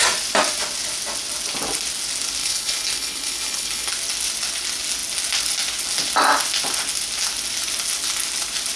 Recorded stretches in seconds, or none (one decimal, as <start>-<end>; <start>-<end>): 0.0-2.4; 3.9-8.8